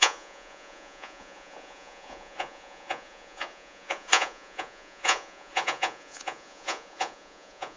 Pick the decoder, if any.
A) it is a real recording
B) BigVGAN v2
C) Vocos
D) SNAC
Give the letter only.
C